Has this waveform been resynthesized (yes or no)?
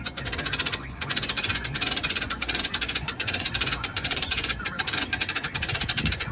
yes